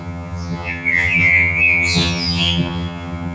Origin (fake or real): fake